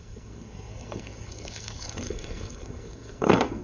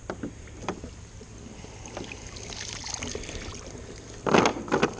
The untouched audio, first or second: second